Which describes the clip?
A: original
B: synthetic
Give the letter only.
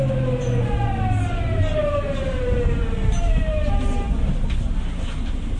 A